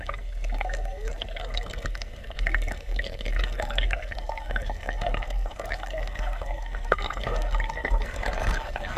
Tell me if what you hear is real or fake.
fake